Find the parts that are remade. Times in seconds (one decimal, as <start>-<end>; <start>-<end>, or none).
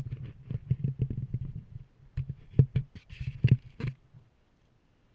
2.7-3.7